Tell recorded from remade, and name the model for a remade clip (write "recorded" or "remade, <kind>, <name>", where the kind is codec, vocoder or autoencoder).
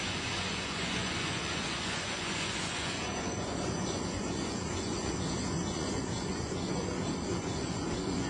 remade, vocoder, Vocos